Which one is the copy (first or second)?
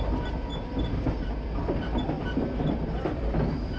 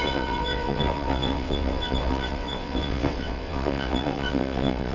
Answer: second